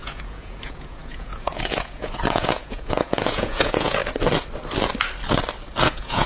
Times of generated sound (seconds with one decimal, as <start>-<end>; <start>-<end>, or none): 0.0-4.0; 5.8-6.3